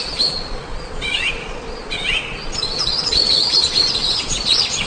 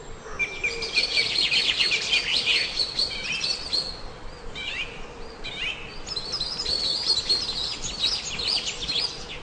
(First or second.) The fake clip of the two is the first